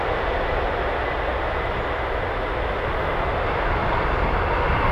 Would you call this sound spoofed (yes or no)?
no